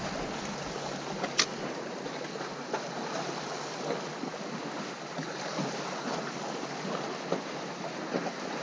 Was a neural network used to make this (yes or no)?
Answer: no